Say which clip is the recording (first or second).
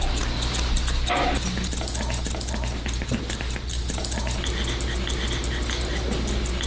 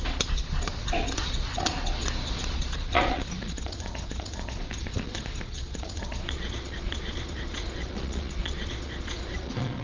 first